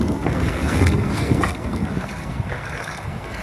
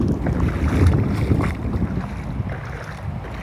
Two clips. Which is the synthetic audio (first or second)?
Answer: first